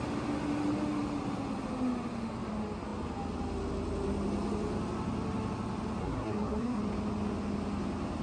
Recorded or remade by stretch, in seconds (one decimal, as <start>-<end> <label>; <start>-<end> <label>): 0.0-6.0 recorded; 6.0-6.8 remade; 6.8-8.2 recorded